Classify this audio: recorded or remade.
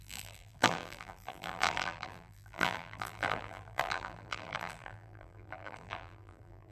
remade